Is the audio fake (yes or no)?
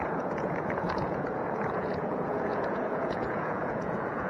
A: yes